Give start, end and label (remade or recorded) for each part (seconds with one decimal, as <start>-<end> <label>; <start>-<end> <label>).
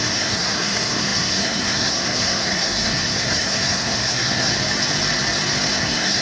0.0-4.5 remade; 4.5-5.8 recorded; 5.8-6.2 remade